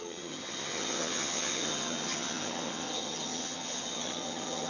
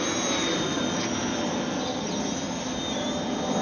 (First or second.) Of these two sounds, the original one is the second